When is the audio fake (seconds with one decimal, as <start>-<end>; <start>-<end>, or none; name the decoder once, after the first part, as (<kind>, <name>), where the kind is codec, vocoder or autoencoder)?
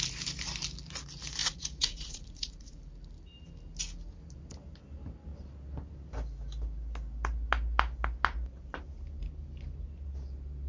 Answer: 1.4-2.8 (vocoder, Vocos)